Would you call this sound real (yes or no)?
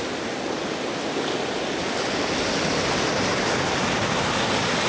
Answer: yes